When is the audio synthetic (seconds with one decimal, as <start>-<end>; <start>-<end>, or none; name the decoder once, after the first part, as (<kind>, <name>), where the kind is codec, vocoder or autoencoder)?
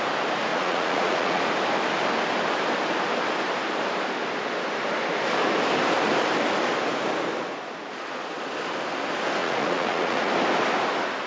0.5-1.4 (vocoder, Vocos); 9.4-10.3